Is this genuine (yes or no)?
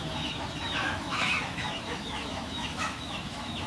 no